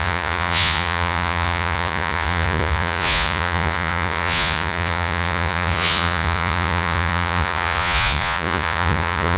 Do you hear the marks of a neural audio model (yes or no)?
yes